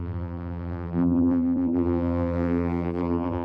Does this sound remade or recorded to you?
remade